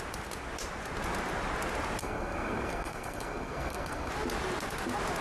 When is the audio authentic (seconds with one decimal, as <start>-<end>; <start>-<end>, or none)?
0.0-2.0; 4.1-5.2